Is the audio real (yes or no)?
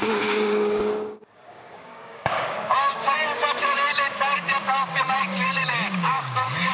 no